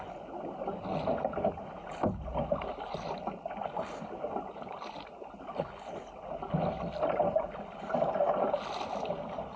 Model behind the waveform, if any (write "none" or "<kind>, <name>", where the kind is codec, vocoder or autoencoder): none